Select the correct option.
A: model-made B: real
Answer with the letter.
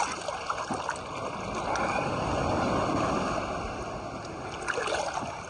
B